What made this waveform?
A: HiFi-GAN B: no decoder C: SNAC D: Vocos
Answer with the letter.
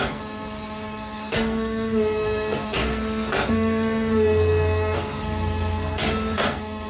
C